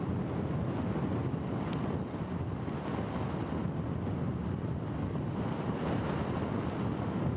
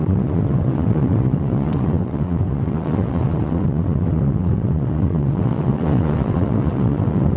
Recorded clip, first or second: first